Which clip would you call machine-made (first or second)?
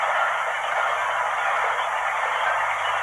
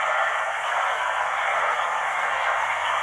second